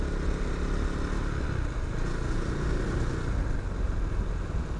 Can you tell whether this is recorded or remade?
recorded